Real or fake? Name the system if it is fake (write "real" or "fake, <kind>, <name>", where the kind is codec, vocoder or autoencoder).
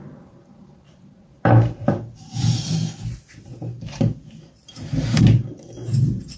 fake, vocoder, BigVGAN v2